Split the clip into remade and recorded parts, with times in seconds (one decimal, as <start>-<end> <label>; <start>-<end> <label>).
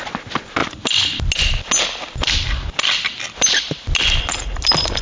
0.0-5.0 recorded